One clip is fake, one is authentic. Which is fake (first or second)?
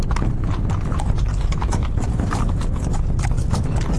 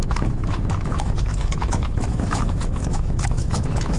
second